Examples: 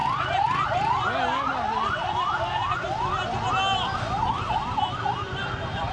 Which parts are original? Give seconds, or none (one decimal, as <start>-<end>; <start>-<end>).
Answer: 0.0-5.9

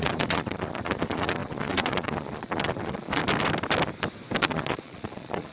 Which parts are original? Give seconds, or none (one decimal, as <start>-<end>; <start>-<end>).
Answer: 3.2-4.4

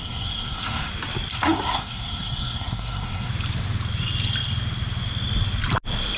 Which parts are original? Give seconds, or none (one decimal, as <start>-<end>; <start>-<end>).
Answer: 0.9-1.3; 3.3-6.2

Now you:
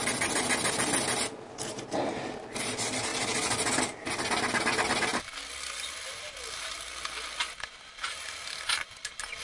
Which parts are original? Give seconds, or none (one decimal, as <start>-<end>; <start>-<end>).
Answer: 0.0-5.1; 7.9-9.4

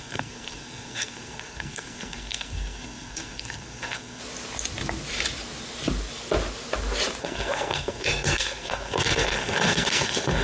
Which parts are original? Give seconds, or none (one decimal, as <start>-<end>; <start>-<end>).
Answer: 4.2-7.2